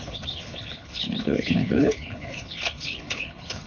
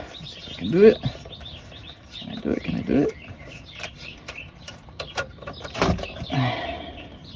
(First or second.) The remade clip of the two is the first